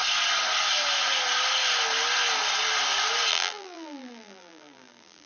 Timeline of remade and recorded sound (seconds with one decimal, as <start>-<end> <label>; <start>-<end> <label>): 0.0-3.3 recorded; 3.3-5.3 remade